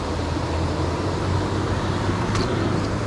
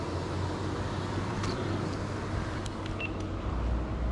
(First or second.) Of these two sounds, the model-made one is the first